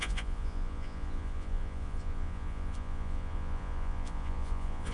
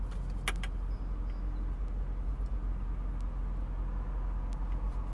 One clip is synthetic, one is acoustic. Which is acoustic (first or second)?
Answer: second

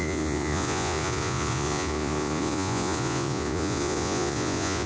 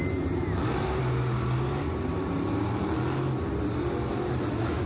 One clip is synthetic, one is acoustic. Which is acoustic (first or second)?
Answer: second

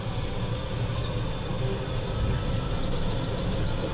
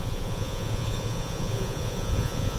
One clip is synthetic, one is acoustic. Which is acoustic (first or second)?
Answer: first